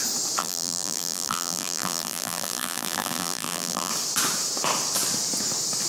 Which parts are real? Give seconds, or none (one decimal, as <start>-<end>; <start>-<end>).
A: 0.0-0.4; 3.9-5.9